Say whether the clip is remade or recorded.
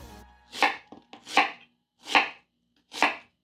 recorded